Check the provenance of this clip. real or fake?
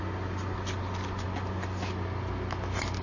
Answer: real